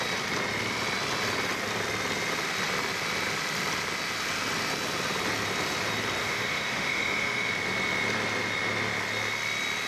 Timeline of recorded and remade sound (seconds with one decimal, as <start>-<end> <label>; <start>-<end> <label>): 0.0-6.2 recorded; 6.2-7.5 remade; 7.5-9.9 recorded